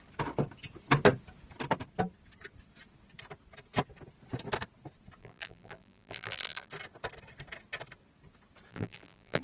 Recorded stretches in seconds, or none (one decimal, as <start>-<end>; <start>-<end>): 0.0-5.2; 6.7-8.7